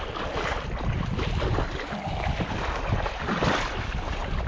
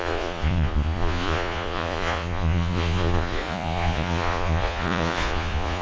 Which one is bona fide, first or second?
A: first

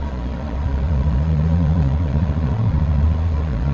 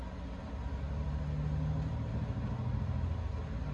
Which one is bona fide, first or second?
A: second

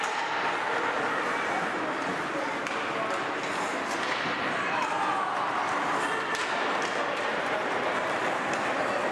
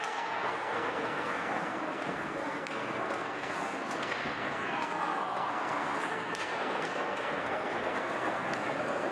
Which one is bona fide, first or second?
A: first